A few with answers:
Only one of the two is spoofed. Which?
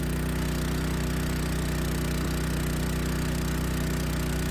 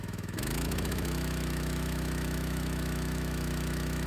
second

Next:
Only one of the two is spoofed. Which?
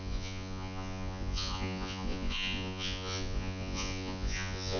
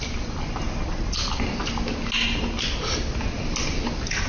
first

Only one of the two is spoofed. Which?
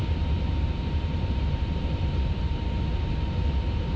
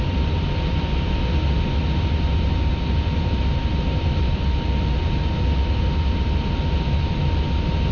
first